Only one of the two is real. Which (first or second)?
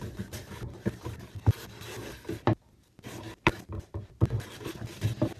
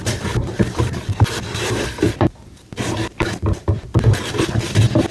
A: first